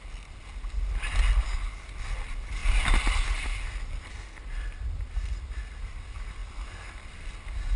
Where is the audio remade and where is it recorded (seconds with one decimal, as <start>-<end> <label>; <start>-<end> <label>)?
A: 0.0-7.8 recorded